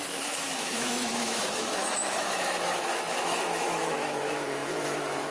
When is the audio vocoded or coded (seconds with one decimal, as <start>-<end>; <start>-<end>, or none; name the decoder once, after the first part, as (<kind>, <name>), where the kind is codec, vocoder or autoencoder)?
0.0-5.3 (autoencoder, DAC-VAE)